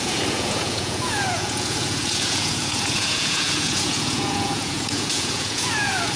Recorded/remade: remade